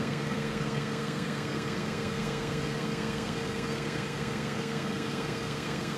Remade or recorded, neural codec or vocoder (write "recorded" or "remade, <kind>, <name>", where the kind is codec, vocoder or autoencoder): remade, codec, SNAC